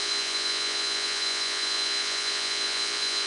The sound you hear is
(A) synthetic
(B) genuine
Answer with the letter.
A